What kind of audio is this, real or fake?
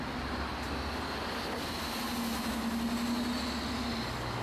real